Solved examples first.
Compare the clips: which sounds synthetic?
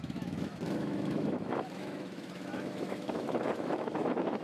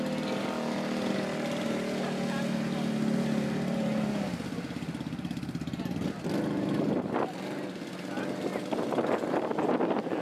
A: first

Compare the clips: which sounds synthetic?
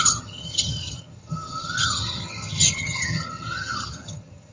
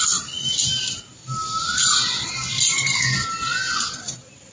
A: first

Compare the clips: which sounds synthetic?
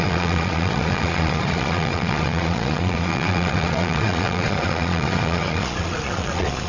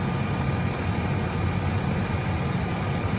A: first